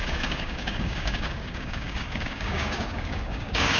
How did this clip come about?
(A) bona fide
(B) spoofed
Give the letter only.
B